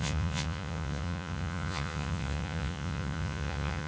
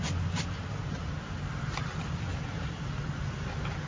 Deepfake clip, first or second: first